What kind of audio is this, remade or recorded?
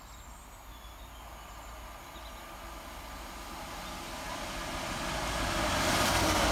recorded